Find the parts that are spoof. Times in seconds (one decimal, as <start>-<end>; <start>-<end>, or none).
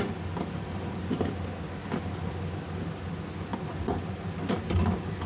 none